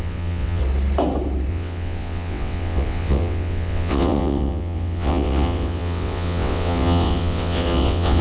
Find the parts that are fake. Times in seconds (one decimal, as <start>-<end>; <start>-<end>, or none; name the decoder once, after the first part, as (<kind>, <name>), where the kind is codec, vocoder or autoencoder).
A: 0.0-0.6 (vocoder, WaveNeXt); 1.5-8.2

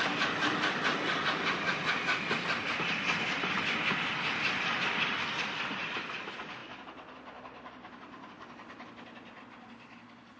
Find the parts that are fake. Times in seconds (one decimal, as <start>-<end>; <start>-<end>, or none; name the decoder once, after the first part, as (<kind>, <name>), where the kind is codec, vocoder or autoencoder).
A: none

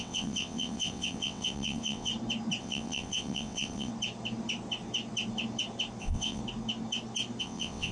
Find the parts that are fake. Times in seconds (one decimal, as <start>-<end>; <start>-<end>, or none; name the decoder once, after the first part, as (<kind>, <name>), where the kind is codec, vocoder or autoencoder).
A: 0.0-2.1 (vocoder, WaveNeXt); 2.6-3.9; 6.0-6.4; 7.4-7.9